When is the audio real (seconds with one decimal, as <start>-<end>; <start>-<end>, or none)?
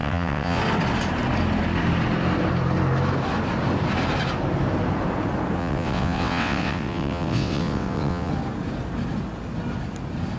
0.6-5.6; 8.3-10.4